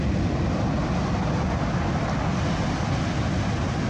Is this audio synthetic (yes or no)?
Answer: no